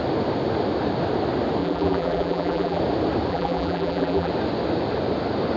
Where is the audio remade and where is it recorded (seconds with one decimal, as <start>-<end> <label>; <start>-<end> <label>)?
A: 0.0-1.6 recorded; 1.6-2.8 remade; 2.8-3.3 recorded; 3.3-4.3 remade; 4.3-5.6 recorded